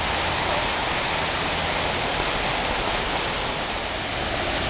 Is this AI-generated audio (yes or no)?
no